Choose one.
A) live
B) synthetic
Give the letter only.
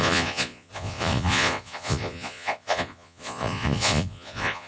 B